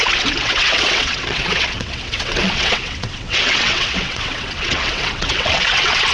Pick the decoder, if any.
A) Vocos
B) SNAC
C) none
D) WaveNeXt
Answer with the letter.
D